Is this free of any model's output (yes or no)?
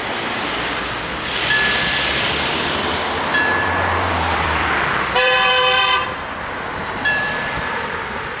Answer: no